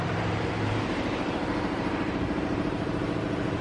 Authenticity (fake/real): fake